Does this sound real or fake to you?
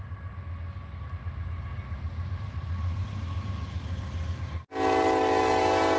real